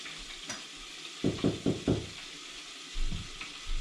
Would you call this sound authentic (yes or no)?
yes